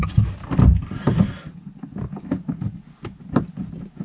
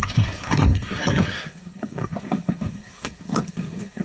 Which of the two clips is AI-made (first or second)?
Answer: second